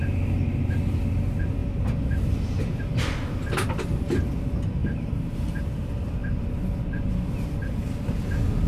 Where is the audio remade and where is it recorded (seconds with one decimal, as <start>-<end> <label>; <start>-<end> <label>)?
0.0-1.6 recorded; 1.6-2.8 remade; 2.8-4.8 recorded; 4.8-5.6 remade; 5.6-8.7 recorded